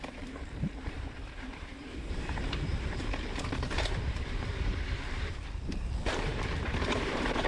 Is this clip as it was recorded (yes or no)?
no